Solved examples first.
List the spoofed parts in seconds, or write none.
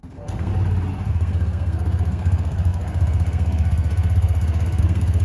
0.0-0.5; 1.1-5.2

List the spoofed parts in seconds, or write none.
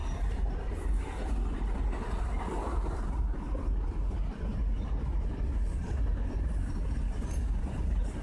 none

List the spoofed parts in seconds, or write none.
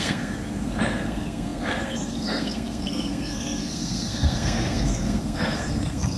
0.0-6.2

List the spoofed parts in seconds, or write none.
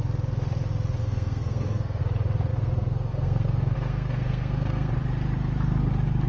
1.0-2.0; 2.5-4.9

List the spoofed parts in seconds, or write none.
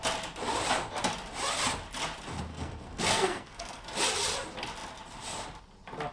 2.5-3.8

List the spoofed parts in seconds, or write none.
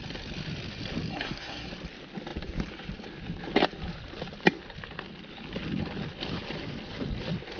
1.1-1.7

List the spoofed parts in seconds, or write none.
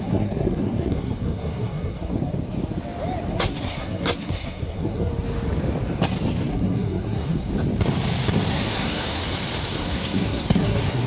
0.0-2.3; 3.3-5.1; 6.5-7.5; 8.5-9.2; 9.7-11.1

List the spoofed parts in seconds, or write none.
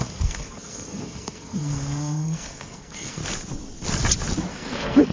0.0-3.2; 4.5-5.1